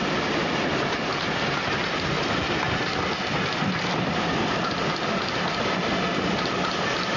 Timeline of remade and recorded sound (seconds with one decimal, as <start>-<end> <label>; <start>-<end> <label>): 0.0-7.2 recorded